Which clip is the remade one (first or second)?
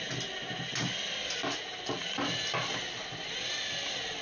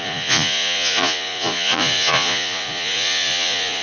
second